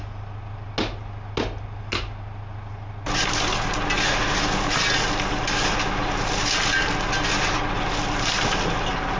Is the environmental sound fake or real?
real